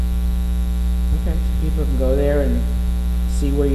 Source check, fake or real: real